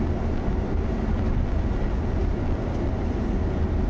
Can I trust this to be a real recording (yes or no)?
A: yes